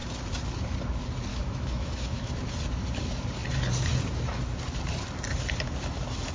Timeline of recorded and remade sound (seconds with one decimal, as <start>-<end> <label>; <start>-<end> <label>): 0.0-1.3 recorded; 1.3-2.3 remade; 2.3-6.3 recorded